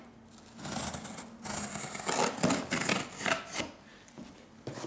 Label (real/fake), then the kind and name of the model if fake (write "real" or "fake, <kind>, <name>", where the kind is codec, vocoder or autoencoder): real